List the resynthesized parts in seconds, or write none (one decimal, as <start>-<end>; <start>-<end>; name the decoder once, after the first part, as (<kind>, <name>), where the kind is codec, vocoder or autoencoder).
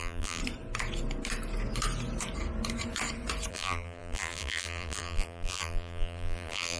0.0-0.4 (vocoder, BigVGAN v2); 3.5-6.8